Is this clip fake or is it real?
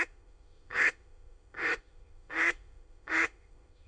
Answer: fake